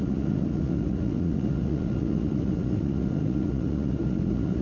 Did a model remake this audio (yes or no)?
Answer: yes